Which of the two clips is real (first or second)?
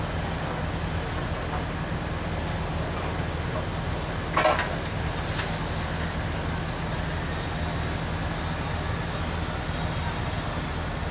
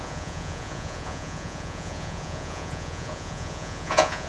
first